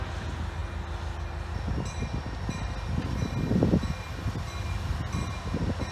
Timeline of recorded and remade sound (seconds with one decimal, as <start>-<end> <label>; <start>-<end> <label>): 0.0-5.9 recorded